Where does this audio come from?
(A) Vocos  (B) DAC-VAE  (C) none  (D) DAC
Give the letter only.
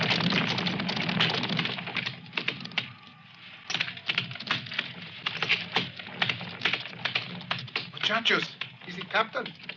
C